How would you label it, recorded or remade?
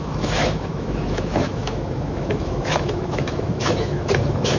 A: remade